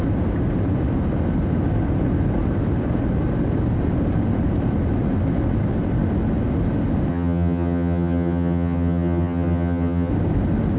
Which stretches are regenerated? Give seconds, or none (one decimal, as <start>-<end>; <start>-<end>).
7.1-10.1